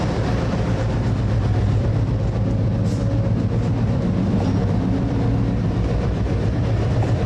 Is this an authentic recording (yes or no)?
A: no